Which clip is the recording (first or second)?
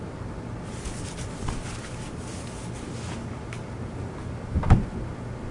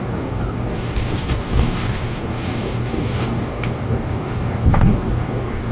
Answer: first